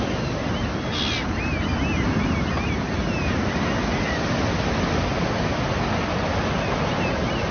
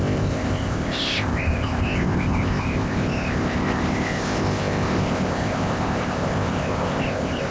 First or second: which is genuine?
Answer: first